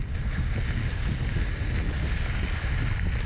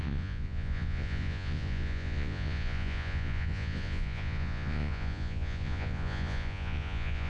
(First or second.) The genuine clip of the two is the first